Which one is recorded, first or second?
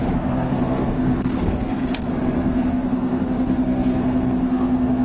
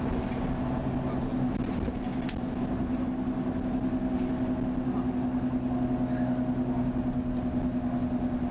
second